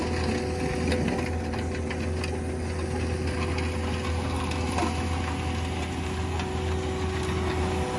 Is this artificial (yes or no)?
no